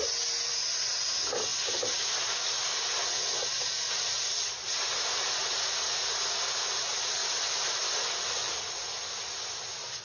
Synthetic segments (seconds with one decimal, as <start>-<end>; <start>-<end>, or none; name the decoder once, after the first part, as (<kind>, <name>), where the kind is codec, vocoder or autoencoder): none